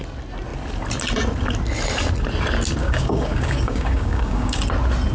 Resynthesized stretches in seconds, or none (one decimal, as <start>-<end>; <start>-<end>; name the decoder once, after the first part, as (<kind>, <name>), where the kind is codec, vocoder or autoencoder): 2.8-4.6 (codec, DAC)